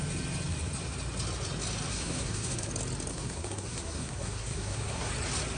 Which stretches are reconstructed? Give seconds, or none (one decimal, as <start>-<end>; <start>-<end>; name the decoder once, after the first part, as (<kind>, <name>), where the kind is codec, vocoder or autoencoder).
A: 1.9-2.7 (codec, SNAC); 3.1-5.1